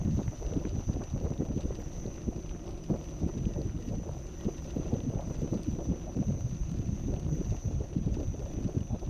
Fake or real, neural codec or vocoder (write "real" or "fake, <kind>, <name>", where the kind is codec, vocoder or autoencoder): real